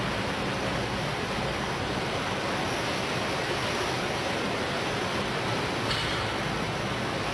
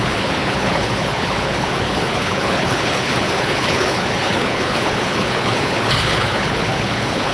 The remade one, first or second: second